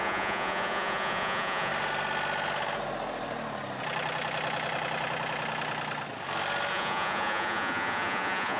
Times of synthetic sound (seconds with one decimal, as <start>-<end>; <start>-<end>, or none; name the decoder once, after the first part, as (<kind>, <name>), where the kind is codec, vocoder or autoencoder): 0.0-1.7 (vocoder, Vocos); 6.7-8.6